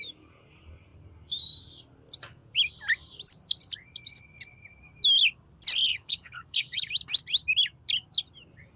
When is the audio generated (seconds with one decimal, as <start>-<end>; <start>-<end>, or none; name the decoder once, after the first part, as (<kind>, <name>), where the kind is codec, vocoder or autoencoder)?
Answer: 5.9-6.8 (codec, HILCodec)